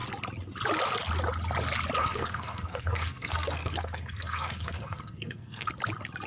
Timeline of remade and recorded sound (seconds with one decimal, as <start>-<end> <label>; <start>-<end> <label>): 0.0-2.0 recorded; 2.0-5.7 remade; 5.7-6.3 recorded